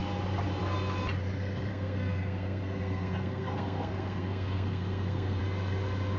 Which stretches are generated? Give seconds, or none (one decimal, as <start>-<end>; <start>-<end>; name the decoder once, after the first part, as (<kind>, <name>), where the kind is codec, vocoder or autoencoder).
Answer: 1.7-5.4 (codec, SNAC)